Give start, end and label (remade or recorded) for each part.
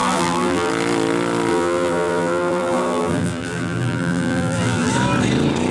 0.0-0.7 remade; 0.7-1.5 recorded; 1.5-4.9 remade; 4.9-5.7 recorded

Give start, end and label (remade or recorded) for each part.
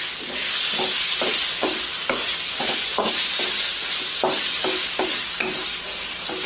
0.0-2.9 recorded; 2.9-4.0 remade; 4.0-6.5 recorded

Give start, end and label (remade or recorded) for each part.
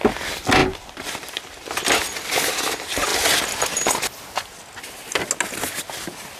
0.0-0.6 recorded; 0.6-1.7 remade; 1.7-6.4 recorded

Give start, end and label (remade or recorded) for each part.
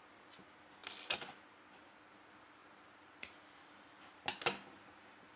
0.0-0.8 recorded; 0.8-2.1 remade; 2.1-5.4 recorded